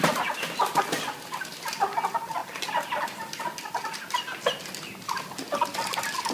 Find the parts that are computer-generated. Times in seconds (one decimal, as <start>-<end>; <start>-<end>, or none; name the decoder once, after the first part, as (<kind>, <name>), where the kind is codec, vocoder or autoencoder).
none